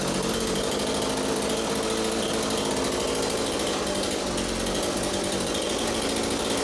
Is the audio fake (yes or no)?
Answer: no